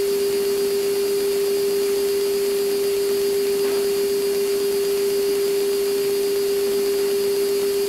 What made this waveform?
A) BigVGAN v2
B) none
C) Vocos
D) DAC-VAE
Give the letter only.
B